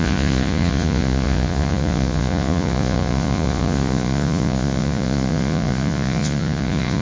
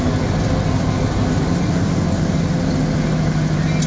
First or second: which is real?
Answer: second